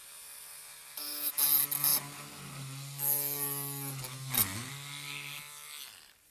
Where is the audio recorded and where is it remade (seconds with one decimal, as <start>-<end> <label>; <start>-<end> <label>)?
0.0-1.3 remade; 1.3-6.3 recorded